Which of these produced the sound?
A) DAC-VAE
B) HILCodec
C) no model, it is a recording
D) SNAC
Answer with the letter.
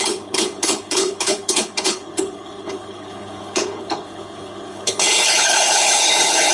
B